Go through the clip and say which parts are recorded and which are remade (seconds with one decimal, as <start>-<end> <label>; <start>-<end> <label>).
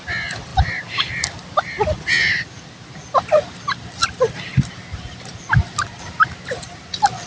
0.0-7.3 recorded